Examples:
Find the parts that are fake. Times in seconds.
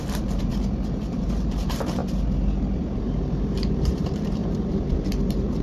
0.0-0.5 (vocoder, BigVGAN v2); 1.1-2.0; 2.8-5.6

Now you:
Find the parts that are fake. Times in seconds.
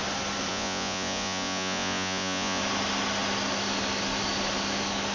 0.5-2.6 (vocoder, Vocos)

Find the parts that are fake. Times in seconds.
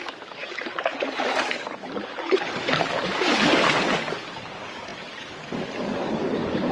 0.0-6.7 (codec, DAC)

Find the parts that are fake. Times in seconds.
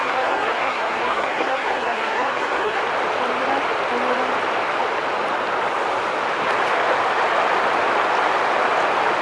0.0-2.8 (codec, SNAC)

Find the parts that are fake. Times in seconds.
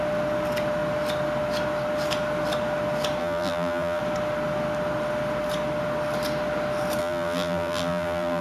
3.2-4.0 (vocoder, BigVGAN v2); 7.0-8.4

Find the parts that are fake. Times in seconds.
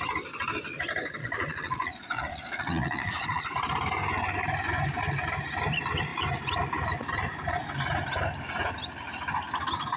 1.2-3.5 (vocoder, Vocos)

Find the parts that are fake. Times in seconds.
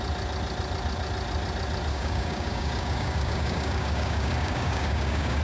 1.9-5.4 (codec, DAC)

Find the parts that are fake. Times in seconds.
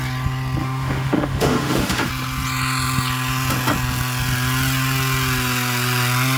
0.6-2.1 (autoencoder, DAC-VAE)